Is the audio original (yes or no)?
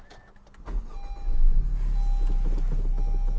yes